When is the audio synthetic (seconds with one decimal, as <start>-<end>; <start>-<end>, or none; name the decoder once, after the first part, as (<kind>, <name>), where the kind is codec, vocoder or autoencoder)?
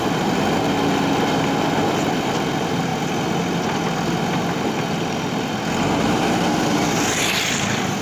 none